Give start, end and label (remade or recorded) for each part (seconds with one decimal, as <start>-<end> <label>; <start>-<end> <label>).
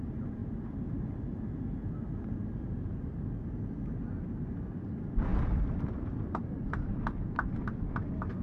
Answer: 0.0-0.4 recorded; 0.4-1.4 remade; 1.4-2.4 recorded; 2.4-3.3 remade; 3.3-5.3 recorded; 5.3-6.9 remade; 6.9-8.4 recorded